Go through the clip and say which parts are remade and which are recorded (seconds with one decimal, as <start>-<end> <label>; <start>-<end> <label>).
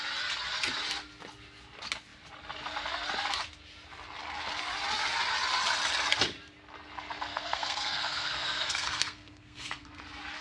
0.0-7.3 recorded; 7.3-10.0 remade; 10.0-10.4 recorded